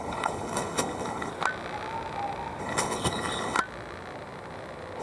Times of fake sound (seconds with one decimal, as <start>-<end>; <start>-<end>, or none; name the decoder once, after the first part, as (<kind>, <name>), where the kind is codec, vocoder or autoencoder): 0.0-1.3 (codec, HILCodec); 2.6-3.6